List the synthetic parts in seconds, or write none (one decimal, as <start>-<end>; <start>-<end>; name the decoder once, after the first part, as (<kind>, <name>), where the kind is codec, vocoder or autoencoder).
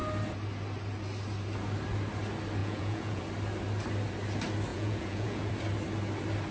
2.6-3.2 (vocoder, Vocos); 4.7-5.5